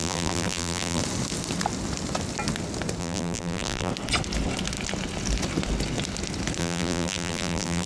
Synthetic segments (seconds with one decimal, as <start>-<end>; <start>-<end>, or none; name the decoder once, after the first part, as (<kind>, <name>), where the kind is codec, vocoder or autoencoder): 0.0-1.0 (vocoder, BigVGAN v2); 3.0-3.9; 6.6-7.9